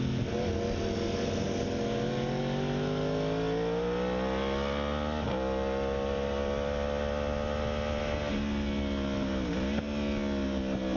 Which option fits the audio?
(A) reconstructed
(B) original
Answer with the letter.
B